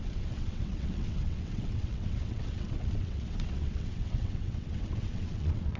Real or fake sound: fake